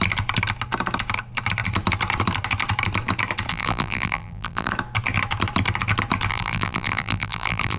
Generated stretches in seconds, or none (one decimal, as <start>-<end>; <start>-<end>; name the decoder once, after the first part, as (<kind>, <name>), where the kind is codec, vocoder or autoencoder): 3.5-4.7 (vocoder, BigVGAN v2); 6.3-7.8